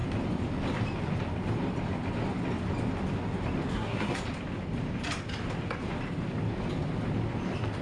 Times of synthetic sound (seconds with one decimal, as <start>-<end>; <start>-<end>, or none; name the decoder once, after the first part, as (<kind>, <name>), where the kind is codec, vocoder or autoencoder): 3.7-4.2 (codec, SNAC)